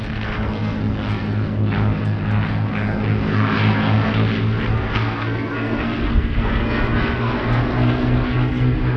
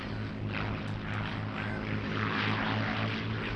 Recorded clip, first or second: second